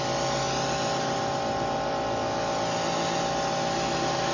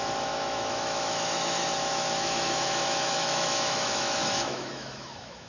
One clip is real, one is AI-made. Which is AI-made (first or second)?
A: second